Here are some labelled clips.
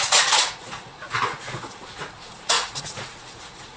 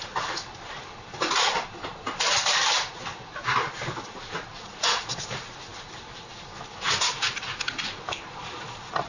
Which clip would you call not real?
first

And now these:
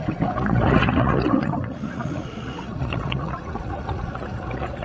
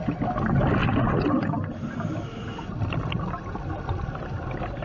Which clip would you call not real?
first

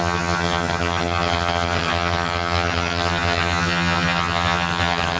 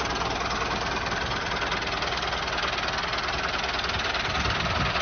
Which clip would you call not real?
first